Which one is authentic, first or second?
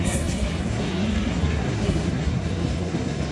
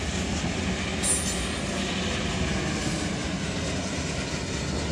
second